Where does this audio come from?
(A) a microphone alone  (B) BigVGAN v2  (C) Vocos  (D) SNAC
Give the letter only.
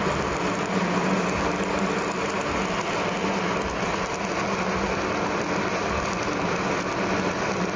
A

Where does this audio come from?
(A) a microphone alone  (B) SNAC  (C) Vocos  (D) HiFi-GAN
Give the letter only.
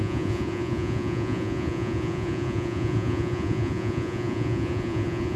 C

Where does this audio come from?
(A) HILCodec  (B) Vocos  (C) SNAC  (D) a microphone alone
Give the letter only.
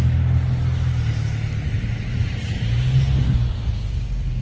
D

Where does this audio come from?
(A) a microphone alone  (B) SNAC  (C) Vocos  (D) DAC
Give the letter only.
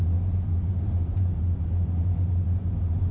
A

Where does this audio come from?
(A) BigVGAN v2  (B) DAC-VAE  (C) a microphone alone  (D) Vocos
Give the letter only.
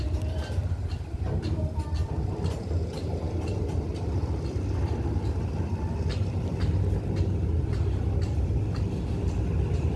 C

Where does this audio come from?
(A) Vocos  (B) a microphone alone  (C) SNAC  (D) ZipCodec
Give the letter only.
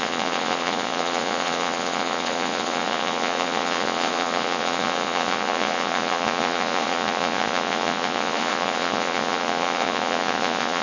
A